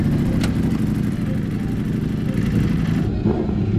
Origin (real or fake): real